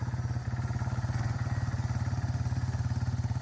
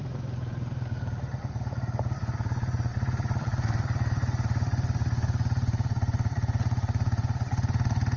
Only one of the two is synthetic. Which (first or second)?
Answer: second